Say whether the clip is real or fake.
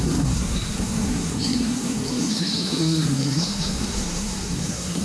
fake